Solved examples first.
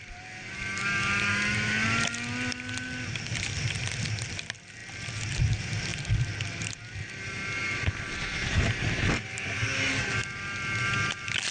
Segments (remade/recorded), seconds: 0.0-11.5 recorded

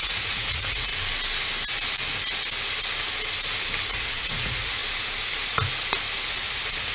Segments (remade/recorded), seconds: 0.0-0.9 remade; 0.9-3.9 recorded; 3.9-4.8 remade; 4.8-6.3 recorded; 6.3-6.9 remade

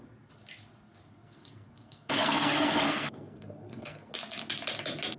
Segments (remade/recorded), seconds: 0.0-1.0 recorded; 1.0-4.1 remade; 4.1-5.2 recorded

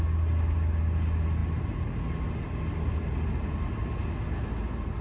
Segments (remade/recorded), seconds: 0.0-5.0 recorded